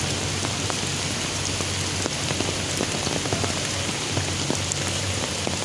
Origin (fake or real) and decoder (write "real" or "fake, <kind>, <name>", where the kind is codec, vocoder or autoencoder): real